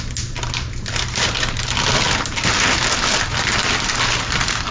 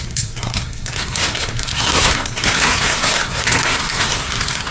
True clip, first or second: first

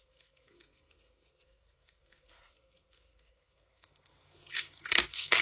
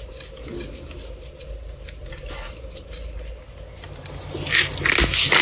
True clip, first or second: second